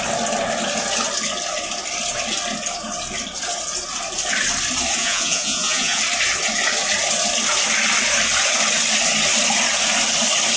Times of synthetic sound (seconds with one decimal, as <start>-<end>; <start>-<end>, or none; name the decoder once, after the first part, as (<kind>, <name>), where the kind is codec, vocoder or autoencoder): 5.0-6.0 (vocoder, Vocos)